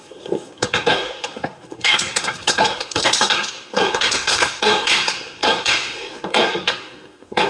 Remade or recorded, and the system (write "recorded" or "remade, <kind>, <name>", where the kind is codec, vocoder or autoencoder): remade, codec, SNAC